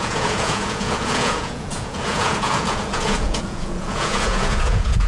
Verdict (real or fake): fake